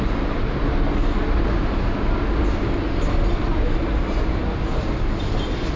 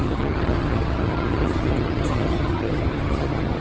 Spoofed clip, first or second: second